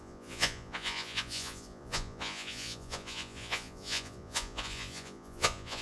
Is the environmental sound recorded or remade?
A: remade